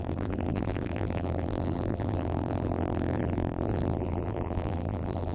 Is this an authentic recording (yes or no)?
no